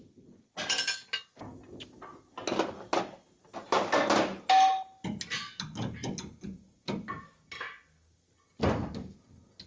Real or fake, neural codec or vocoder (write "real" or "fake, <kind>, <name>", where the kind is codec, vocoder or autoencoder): real